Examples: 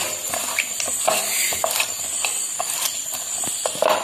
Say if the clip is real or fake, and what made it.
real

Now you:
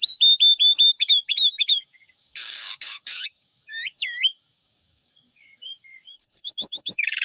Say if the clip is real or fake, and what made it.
fake, codec, DAC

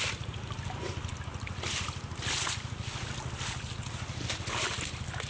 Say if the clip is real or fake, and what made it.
real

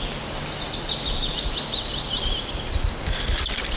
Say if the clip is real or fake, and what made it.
real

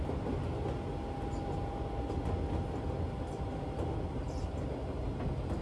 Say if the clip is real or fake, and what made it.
real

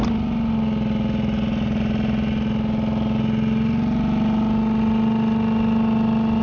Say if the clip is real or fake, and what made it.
real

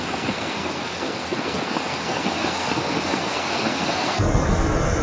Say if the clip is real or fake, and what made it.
fake, codec, SNAC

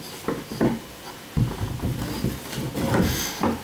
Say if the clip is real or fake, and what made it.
real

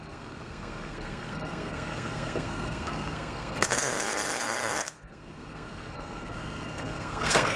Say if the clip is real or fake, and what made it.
fake, codec, SNAC